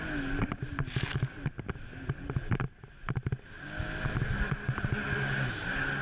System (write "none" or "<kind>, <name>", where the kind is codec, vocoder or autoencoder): none